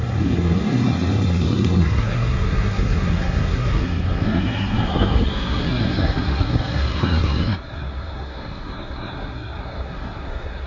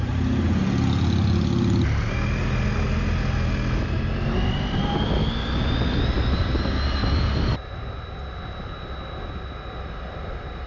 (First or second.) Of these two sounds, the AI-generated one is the first